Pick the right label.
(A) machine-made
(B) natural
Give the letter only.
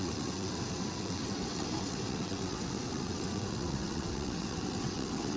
A